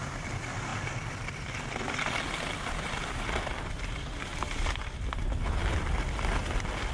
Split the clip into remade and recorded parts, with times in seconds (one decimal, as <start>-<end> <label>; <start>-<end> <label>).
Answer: 0.0-6.9 recorded